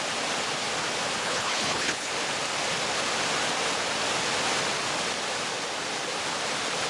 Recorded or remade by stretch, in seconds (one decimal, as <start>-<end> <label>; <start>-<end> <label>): 0.0-1.2 recorded; 1.2-2.1 remade; 2.1-6.9 recorded